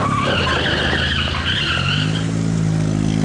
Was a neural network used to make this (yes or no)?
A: no